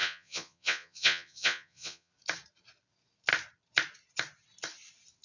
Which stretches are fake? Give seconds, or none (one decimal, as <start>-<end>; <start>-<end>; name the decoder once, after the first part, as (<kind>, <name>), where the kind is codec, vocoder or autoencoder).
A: 0.0-2.1 (vocoder, Vocos)